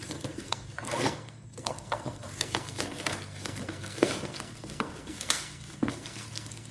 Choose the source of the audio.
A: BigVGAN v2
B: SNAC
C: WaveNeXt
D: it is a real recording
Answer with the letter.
B